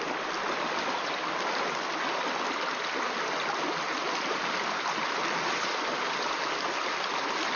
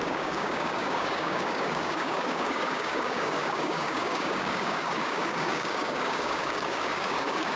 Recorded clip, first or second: first